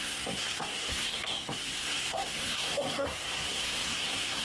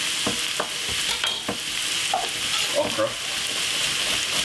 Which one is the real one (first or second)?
second